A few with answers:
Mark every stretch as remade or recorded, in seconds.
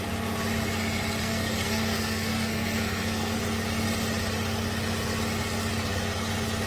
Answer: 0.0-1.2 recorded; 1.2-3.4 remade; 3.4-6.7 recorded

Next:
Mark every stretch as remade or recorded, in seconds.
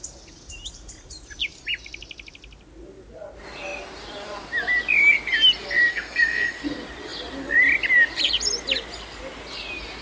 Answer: 0.0-5.9 recorded; 5.9-6.6 remade; 6.6-10.0 recorded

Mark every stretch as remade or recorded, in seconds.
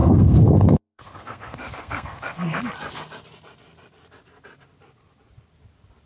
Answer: 0.0-2.6 remade; 2.6-6.0 recorded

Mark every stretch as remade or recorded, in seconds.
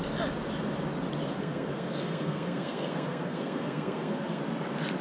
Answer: 0.0-1.4 recorded; 1.4-4.4 remade; 4.4-5.0 recorded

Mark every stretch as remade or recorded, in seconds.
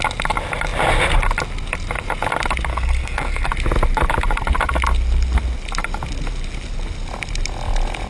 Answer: 0.0-2.7 recorded; 2.7-3.5 remade; 3.5-8.1 recorded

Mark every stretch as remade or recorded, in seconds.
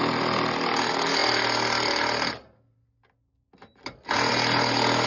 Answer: 0.0-5.1 recorded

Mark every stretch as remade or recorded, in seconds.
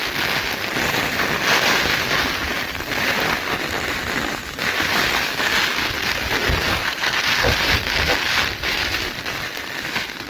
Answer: 0.0-6.7 recorded; 6.7-7.2 remade; 7.2-10.3 recorded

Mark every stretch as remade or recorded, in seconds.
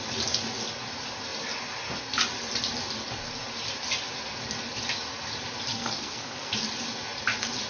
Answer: 0.0-5.7 recorded; 5.7-6.5 remade; 6.5-7.7 recorded